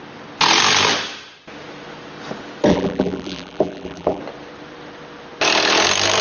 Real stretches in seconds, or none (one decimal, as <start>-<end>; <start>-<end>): 0.0-2.7; 4.2-6.2